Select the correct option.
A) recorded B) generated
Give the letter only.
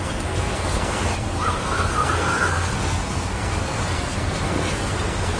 B